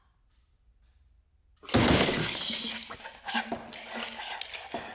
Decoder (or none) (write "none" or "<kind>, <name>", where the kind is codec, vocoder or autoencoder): none